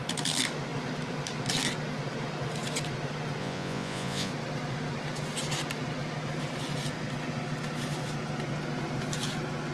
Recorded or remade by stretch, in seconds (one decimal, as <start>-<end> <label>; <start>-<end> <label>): 0.0-3.4 recorded; 3.4-4.3 remade; 4.3-9.7 recorded